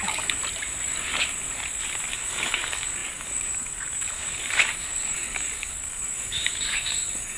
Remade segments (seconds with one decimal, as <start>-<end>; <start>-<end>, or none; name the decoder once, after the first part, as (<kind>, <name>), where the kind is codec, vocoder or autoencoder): 0.0-0.4 (codec, DAC); 2.1-7.4